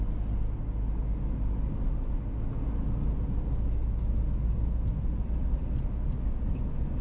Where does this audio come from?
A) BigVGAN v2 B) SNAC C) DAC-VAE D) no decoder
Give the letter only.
D